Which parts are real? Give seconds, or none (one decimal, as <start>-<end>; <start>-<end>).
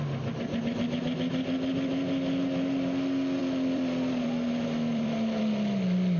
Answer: 0.0-3.4; 5.4-6.2